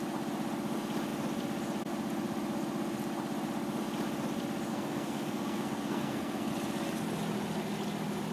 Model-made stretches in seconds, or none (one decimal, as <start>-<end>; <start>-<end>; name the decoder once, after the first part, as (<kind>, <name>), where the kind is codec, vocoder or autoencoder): 4.7-6.5 (codec, SNAC)

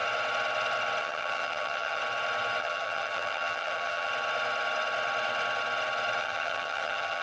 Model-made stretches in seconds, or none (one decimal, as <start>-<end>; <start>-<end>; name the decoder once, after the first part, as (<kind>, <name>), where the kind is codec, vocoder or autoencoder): 1.0-2.0 (vocoder, HiFi-GAN); 2.6-4.1; 6.2-7.2

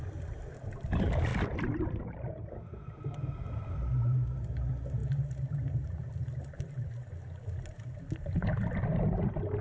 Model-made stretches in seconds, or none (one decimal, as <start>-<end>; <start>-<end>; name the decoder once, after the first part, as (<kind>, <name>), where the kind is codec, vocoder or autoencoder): 1.3-2.5 (vocoder, BigVGAN v2)